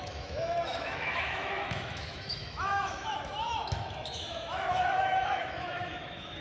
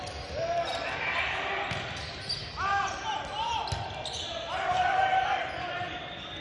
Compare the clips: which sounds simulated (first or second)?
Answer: first